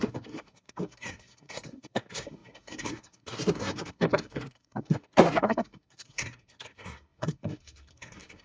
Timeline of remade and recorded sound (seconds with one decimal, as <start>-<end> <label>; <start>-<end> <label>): 0.0-8.4 remade